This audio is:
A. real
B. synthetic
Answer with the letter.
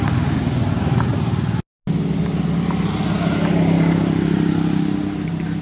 A